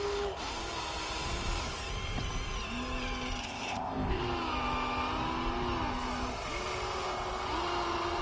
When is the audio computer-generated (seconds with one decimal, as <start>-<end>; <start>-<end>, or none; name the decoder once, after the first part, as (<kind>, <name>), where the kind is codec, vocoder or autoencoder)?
3.4-4.2 (codec, ZipCodec)